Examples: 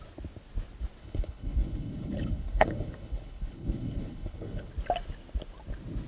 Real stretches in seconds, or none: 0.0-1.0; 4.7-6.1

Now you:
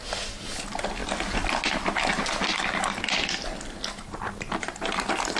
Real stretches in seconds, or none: 0.0-5.4

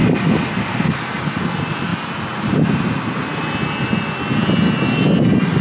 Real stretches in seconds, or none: 0.0-5.6

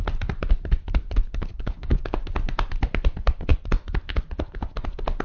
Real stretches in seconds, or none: 0.0-1.5; 2.2-5.2

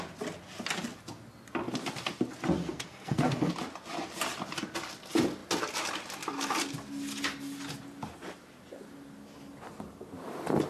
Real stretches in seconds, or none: 0.0-2.6; 3.5-10.7

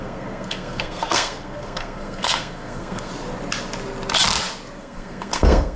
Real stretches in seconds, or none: 3.1-4.8

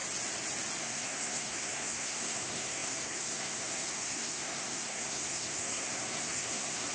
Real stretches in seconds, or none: 0.0-0.8

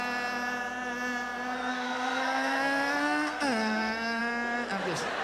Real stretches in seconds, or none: 0.0-1.7; 4.2-5.2